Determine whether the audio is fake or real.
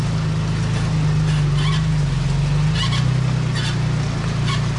real